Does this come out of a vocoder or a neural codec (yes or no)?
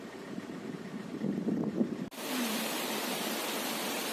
no